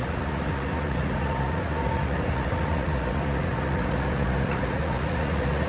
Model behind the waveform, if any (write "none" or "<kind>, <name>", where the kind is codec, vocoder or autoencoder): vocoder, Vocos